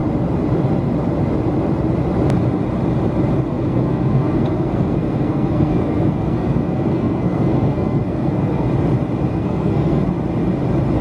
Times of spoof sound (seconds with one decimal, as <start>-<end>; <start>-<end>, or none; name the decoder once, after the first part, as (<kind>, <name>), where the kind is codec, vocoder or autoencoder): 3.5-8.7 (codec, SNAC); 9.3-10.0